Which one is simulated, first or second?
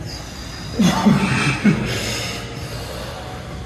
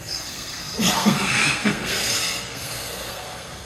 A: second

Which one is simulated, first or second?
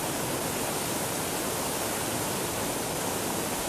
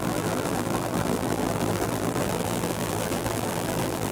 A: second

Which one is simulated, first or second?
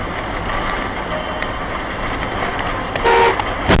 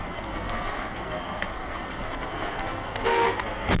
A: second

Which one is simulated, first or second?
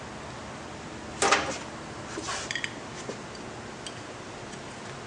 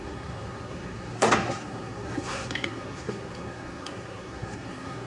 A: second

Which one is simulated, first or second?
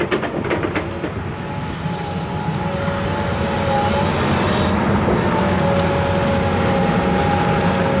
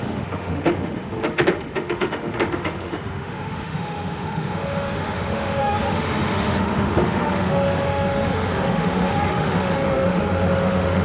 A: second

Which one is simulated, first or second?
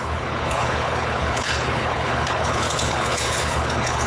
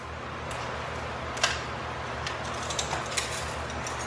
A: first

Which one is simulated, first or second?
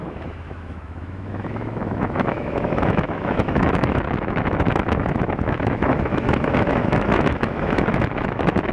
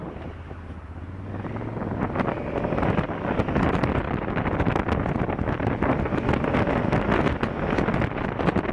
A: first